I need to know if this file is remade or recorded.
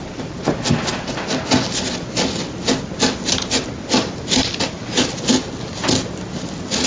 recorded